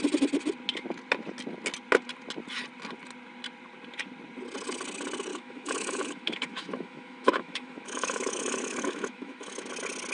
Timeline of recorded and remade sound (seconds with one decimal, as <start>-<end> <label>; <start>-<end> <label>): 0.0-5.3 recorded; 5.3-9.7 remade; 9.7-10.1 recorded